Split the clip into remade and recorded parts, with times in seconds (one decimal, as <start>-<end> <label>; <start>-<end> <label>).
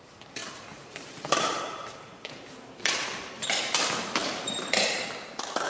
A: 0.0-0.4 recorded; 0.4-3.8 remade; 3.8-4.2 recorded; 4.2-5.1 remade; 5.1-5.7 recorded